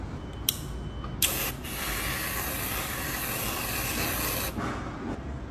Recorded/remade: recorded